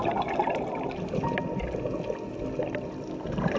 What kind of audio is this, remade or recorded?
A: recorded